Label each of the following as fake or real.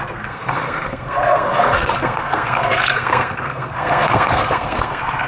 fake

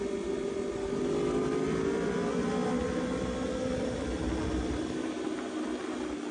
real